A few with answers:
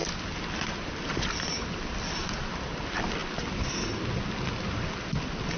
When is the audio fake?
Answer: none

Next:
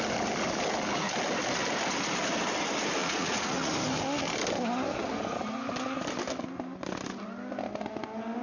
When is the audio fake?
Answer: 3.0-3.7

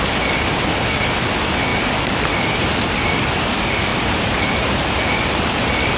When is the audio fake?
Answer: none